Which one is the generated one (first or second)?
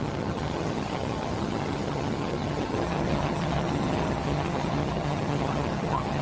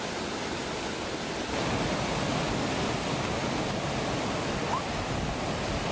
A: first